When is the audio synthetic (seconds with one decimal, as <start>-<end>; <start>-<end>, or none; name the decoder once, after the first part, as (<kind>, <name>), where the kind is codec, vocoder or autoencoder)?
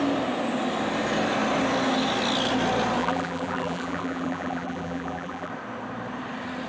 3.0-5.5 (vocoder, BigVGAN v2)